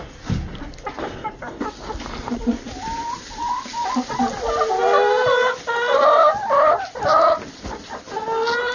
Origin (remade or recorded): recorded